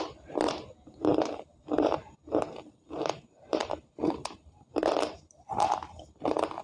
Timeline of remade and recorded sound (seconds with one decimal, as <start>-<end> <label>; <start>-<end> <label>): 0.0-6.6 remade